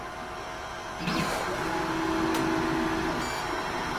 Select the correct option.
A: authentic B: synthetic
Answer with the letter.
A